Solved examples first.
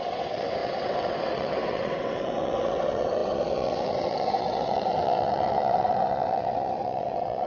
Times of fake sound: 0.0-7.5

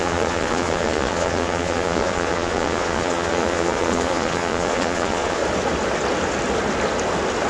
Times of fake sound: 0.0-5.4

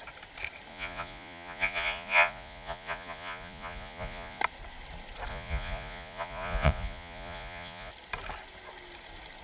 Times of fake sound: 0.7-4.4; 5.3-7.9

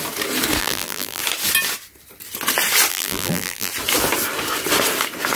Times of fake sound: 0.6-1.2; 2.9-3.7

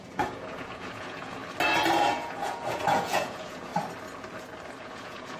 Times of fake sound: 0.0-1.4; 2.0-3.7; 4.8-5.4

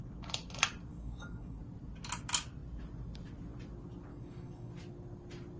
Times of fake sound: 0.9-1.6; 4.1-4.7